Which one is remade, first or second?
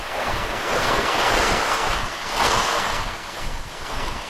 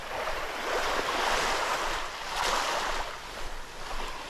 first